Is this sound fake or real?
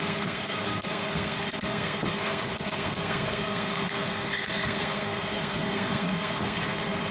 fake